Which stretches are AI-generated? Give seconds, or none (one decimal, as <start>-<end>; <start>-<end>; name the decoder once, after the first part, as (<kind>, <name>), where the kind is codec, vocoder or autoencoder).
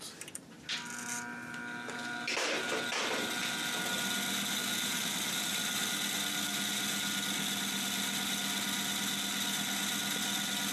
none